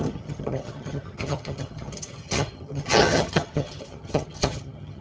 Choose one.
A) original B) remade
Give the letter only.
B